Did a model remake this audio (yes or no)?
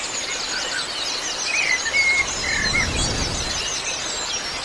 no